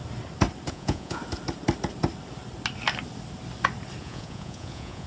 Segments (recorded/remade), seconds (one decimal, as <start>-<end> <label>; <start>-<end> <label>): 0.0-0.7 recorded; 0.7-1.2 remade; 1.2-4.0 recorded; 4.0-5.1 remade